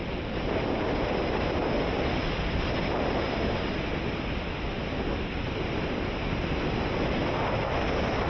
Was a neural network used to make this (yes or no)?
no